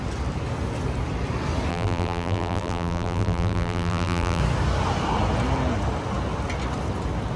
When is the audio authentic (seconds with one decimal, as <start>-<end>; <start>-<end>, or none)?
0.0-1.7; 4.4-7.4